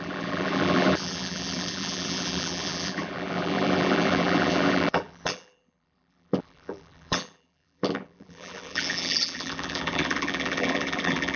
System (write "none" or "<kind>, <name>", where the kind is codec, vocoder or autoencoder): vocoder, BigVGAN v2